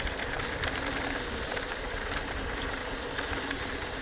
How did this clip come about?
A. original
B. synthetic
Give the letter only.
A